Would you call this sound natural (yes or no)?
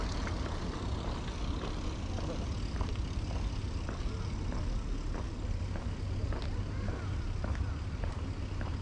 yes